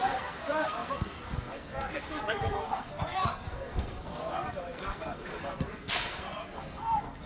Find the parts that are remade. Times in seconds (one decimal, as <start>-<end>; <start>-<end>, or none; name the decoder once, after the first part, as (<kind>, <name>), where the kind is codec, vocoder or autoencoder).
0.0-7.3 (codec, SNAC)